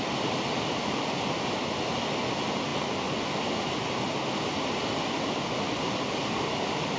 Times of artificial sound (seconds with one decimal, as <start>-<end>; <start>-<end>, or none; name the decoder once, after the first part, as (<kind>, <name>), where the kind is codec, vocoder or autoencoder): none